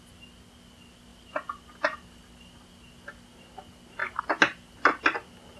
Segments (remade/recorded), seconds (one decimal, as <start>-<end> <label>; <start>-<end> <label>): 0.0-1.1 recorded; 1.1-2.5 remade; 2.5-5.6 recorded